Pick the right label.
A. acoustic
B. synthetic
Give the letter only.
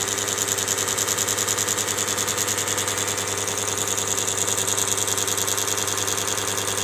A